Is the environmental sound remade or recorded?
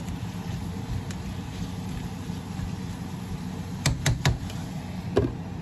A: recorded